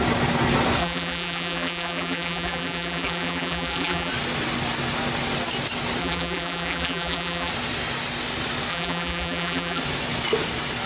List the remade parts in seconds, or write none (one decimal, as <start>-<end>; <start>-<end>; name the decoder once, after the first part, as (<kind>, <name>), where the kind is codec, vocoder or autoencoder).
0.8-4.1 (vocoder, BigVGAN v2); 6.0-7.5; 8.7-9.8